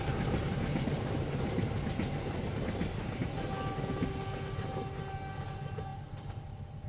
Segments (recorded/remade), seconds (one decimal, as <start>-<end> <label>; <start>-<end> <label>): 0.0-6.9 recorded